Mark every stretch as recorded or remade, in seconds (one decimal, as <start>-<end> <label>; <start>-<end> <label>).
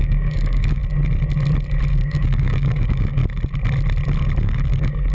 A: 0.0-0.8 remade; 0.8-1.9 recorded; 1.9-3.2 remade; 3.2-4.4 recorded; 4.4-5.1 remade